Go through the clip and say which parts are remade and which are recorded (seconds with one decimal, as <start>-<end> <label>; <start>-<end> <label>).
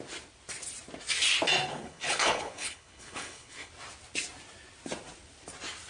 0.0-1.7 recorded; 1.7-3.7 remade; 3.7-5.9 recorded